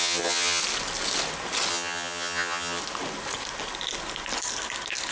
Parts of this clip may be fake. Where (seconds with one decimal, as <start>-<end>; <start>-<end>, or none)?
0.0-0.6; 1.7-2.8